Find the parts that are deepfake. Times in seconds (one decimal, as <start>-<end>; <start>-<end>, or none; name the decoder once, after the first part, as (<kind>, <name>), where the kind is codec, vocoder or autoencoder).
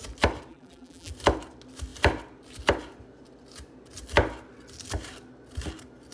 0.5-1.1 (vocoder, BigVGAN v2)